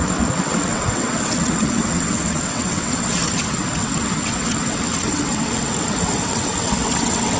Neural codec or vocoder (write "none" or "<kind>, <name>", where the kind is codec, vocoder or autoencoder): vocoder, WaveNeXt